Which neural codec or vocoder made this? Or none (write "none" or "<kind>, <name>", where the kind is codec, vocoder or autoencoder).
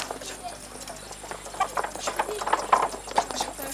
none